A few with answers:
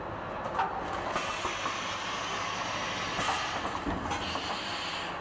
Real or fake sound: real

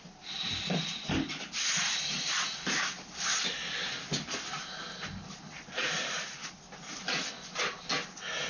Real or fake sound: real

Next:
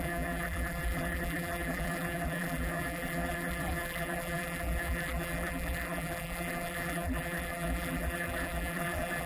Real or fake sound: fake